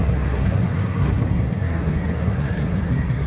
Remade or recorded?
remade